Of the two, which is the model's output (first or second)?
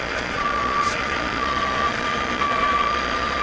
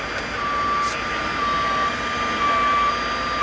first